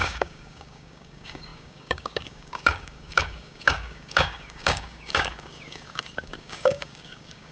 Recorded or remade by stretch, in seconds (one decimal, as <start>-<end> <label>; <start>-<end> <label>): 0.0-7.5 remade